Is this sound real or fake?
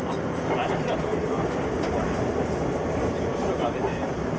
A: real